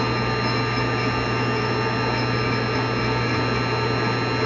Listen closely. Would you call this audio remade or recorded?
recorded